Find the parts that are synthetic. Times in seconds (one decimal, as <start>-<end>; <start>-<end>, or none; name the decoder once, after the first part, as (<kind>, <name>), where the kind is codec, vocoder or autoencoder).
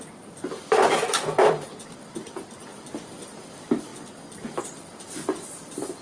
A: 0.0-6.0 (vocoder, BigVGAN v2)